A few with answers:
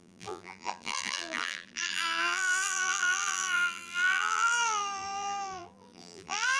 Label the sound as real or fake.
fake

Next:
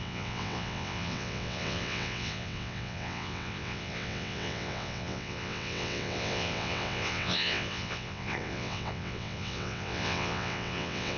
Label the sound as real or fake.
fake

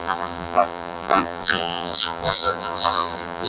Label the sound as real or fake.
fake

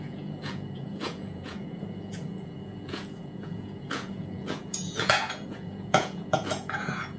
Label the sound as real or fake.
fake